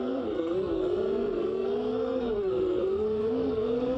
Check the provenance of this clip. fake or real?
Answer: fake